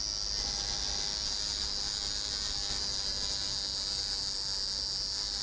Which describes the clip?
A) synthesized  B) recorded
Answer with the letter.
B